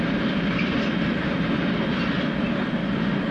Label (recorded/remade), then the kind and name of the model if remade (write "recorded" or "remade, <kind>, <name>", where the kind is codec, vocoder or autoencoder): recorded